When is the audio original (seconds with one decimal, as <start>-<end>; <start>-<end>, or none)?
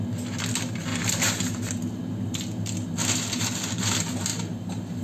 0.0-4.3